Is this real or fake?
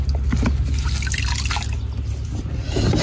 real